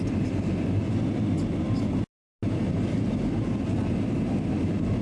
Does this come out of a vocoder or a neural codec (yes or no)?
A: no